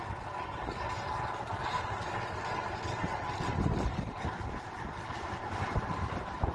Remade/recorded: recorded